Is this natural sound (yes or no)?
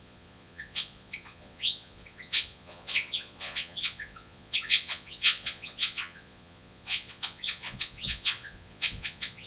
no